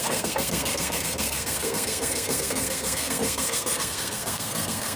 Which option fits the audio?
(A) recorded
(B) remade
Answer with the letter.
B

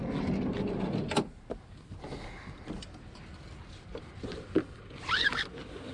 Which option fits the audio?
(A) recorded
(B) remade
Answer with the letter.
A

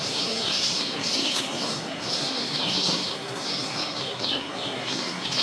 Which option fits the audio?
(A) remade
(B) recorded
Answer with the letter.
A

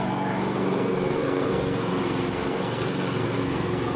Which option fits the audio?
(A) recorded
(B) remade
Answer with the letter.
B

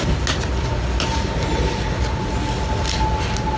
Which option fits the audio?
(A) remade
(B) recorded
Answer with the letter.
B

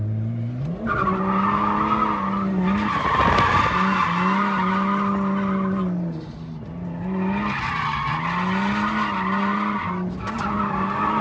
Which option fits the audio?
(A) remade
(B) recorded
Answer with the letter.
B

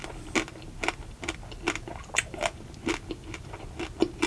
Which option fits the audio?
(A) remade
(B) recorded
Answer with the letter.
B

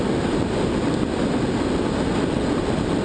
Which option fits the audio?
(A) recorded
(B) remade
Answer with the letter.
A